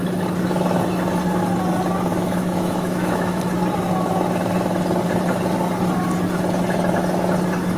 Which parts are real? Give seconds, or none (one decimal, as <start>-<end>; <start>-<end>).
0.0-2.1; 3.4-7.8